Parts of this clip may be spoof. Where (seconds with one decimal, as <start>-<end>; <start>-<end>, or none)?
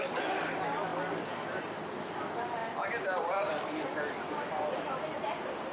none